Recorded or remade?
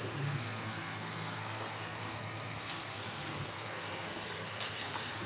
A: remade